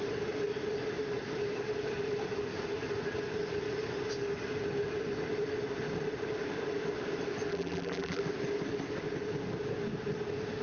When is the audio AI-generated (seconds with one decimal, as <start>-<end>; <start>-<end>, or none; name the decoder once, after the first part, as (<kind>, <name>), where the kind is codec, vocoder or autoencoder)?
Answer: 7.5-8.2 (vocoder, BigVGAN v2)